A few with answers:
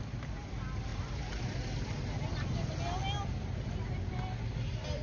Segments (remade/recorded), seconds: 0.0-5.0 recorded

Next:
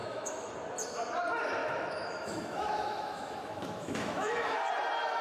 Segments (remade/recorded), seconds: 0.0-0.5 remade; 0.5-1.6 recorded; 1.6-4.7 remade; 4.7-5.2 recorded

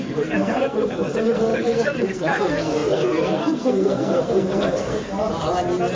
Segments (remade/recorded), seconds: 0.0-5.2 remade; 5.2-6.0 recorded

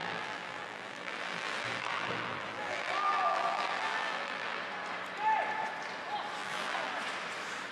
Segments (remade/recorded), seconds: 0.0-4.6 remade; 4.6-6.4 recorded; 6.4-6.9 remade; 6.9-7.7 recorded

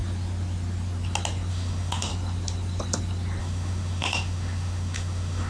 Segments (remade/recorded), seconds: 0.0-1.5 recorded; 1.5-2.1 remade; 2.1-3.4 recorded; 3.4-5.5 remade

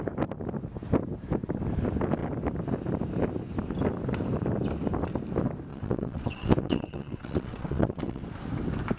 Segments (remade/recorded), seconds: 0.0-5.7 recorded; 5.7-8.2 remade; 8.2-9.0 recorded

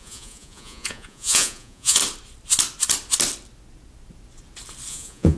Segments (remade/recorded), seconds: 0.0-2.0 remade; 2.0-4.9 recorded; 4.9-5.4 remade

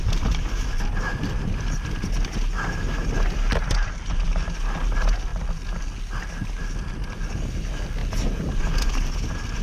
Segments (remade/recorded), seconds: 0.0-9.6 recorded